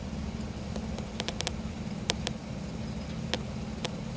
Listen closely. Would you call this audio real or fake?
real